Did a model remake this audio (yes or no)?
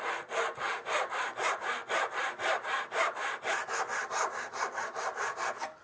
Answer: no